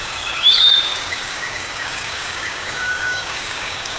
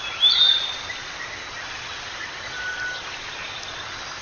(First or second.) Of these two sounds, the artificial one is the first